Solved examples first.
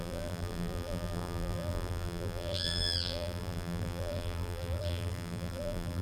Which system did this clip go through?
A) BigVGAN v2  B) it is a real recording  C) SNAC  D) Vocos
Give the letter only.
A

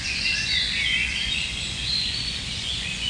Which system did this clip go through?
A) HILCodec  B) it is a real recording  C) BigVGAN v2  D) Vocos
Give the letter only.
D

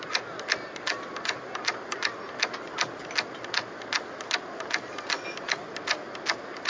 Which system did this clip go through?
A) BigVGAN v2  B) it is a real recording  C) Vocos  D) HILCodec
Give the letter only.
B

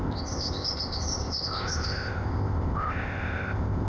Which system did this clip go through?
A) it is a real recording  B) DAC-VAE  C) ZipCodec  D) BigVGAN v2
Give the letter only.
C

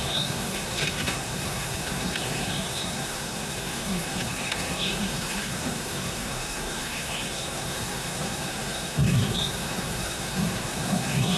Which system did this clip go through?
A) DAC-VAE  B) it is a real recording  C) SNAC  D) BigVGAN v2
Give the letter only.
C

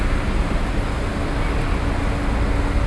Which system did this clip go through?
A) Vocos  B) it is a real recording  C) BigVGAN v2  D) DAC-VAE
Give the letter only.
B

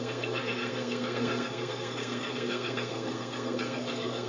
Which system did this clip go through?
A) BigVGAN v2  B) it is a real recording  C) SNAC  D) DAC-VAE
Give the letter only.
C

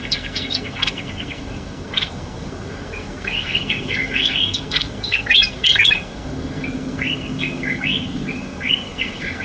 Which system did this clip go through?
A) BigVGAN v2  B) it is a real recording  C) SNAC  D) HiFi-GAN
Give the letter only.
C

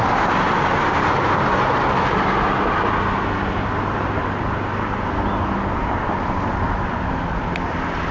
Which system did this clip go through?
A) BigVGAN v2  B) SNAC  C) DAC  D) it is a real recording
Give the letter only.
D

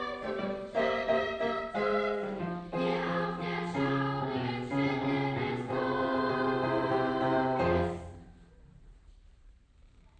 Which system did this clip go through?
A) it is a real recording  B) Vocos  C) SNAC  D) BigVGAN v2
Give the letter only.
D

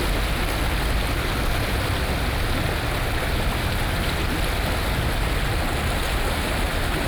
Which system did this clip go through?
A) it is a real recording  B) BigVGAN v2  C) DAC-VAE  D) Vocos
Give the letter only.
A